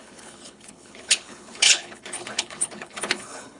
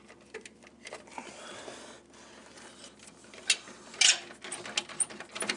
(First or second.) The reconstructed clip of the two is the first